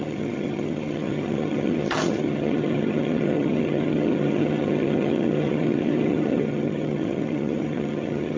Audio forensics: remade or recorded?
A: remade